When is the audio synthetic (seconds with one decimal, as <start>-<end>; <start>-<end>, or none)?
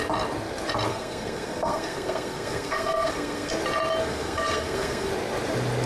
0.9-3.5; 4.0-5.1